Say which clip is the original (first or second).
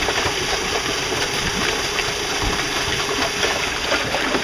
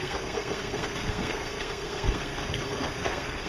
first